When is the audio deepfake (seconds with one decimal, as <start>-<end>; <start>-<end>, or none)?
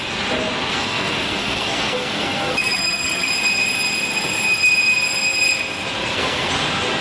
0.7-3.3; 6.0-6.5